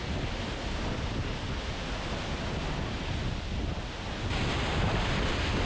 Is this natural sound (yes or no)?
yes